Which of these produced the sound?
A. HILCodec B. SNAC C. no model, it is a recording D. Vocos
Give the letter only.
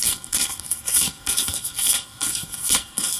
B